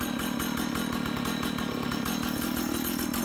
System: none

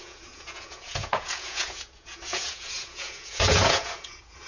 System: vocoder, Vocos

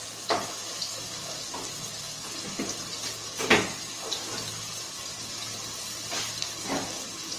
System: none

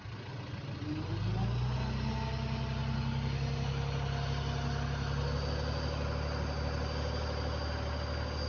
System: none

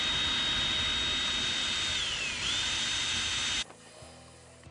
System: none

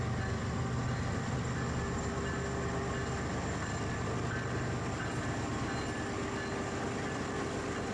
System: none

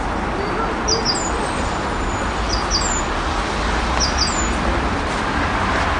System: none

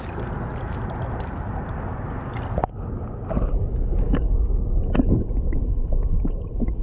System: none